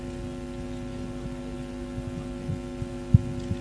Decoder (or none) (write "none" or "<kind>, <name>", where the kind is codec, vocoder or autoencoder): none